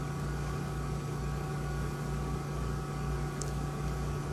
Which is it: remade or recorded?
remade